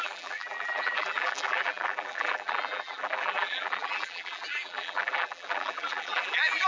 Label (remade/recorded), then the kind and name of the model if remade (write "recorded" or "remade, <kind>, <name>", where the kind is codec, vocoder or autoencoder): remade, vocoder, BigVGAN v2